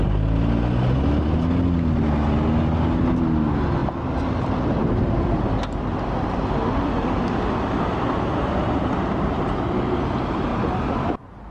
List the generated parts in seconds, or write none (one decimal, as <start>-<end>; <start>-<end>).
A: none